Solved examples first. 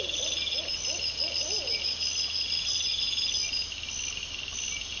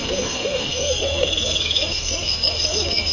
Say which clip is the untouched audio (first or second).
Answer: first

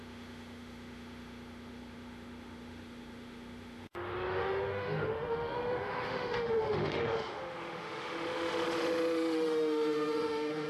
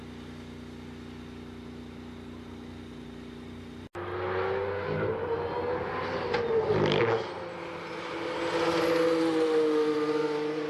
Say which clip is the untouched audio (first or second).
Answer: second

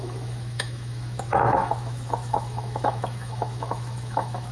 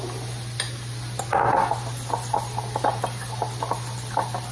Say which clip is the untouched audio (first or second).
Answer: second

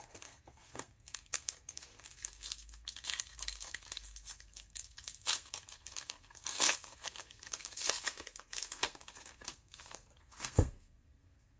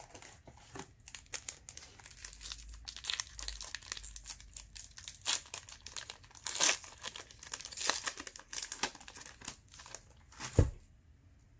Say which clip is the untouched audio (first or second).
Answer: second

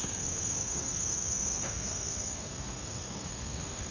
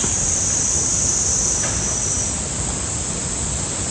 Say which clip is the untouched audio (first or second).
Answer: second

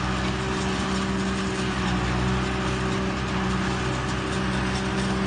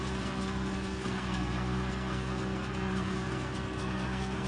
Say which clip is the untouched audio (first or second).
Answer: first